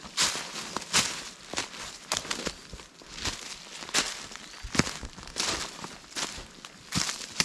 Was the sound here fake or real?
real